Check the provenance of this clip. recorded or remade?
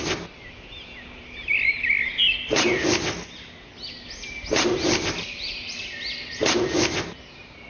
recorded